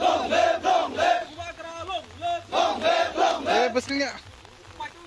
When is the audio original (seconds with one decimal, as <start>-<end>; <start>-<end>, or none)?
0.0-5.1